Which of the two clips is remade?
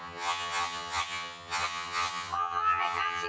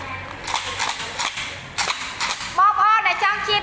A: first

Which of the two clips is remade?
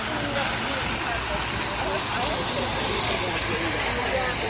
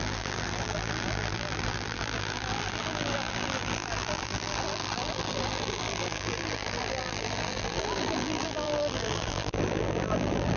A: second